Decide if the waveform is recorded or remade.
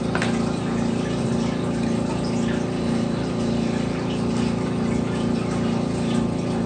recorded